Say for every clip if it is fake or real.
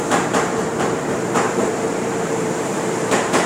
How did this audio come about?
fake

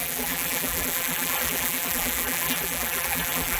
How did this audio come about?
fake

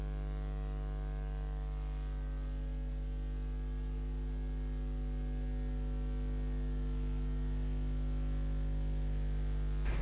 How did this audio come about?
real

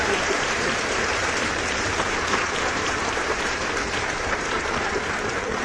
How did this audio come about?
fake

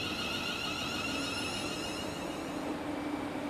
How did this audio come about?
real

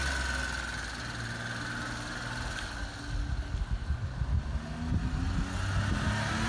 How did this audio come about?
real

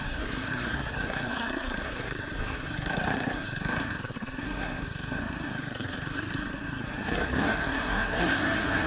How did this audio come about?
fake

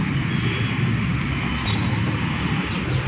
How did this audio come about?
real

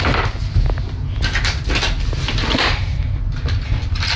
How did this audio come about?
real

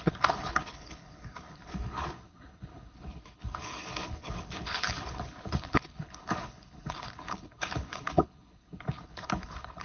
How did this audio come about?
fake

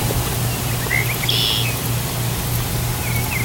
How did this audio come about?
real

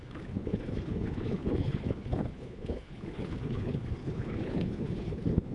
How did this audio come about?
fake